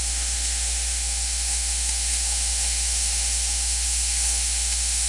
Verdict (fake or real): fake